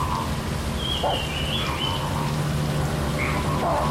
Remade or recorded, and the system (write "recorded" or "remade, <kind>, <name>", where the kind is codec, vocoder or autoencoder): recorded